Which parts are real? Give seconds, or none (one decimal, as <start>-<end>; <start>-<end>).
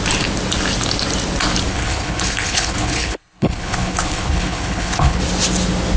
0.0-1.7; 5.2-6.0